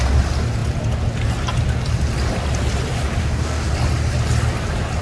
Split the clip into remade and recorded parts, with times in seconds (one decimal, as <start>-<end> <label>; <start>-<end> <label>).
0.0-3.2 recorded; 3.2-3.7 remade; 3.7-5.0 recorded